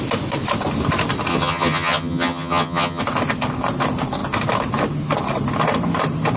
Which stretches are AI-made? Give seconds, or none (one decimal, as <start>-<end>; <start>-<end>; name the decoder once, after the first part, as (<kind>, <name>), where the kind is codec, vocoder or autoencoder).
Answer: 1.3-3.0 (vocoder, HiFi-GAN)